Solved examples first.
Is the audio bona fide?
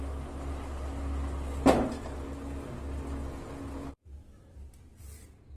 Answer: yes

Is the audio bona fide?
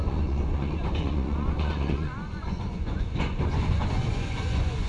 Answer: no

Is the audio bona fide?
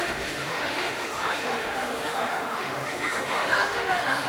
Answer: no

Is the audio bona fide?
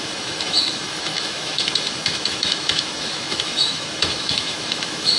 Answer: no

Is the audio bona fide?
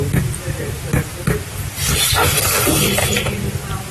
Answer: yes